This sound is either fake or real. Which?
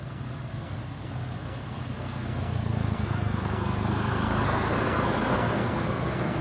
fake